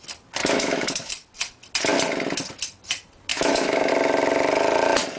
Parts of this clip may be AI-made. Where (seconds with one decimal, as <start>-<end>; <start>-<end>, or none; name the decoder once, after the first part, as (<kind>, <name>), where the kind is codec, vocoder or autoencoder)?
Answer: 0.4-1.1 (autoencoder, DAC-VAE); 3.3-3.9